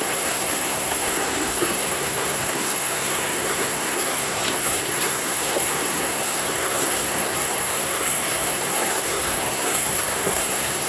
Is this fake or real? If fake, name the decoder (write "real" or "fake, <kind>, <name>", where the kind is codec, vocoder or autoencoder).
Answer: fake, codec, SNAC